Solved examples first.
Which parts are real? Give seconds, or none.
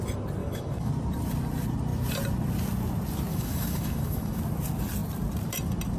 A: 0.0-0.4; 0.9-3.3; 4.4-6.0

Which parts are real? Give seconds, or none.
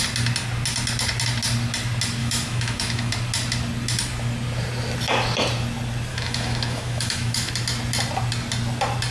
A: 0.0-2.2; 3.1-6.1; 7.5-9.1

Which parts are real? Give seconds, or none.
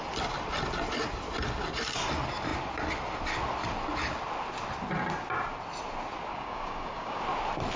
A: 0.0-6.3; 7.2-7.8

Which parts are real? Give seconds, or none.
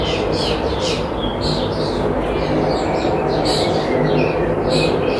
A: 1.3-4.4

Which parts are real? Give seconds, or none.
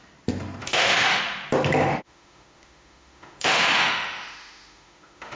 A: 0.0-0.6; 1.2-1.9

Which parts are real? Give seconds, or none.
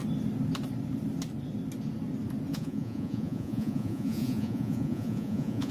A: 0.0-2.5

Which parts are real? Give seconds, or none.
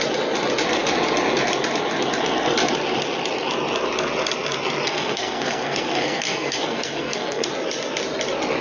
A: 0.0-4.9; 7.5-8.6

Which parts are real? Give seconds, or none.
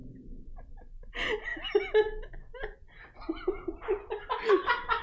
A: 0.0-5.0